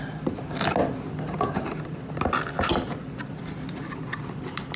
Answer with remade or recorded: recorded